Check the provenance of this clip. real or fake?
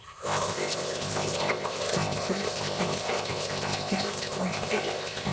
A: fake